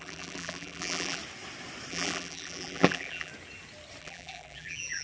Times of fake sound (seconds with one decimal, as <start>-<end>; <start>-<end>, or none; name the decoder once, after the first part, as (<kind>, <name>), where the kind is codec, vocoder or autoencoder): 0.0-1.2 (vocoder, BigVGAN v2); 1.9-3.3; 4.0-5.0